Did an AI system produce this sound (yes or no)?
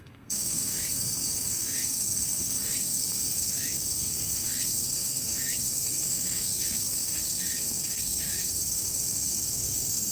yes